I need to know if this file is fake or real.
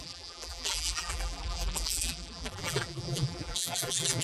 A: fake